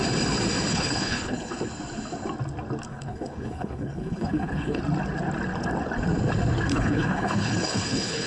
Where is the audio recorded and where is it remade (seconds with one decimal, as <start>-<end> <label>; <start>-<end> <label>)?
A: 0.0-0.7 recorded; 0.7-1.7 remade; 1.7-2.9 recorded; 2.9-4.8 remade; 4.8-6.7 recorded; 6.7-8.3 remade